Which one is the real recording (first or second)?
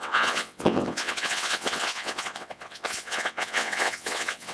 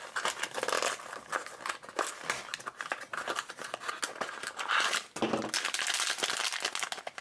second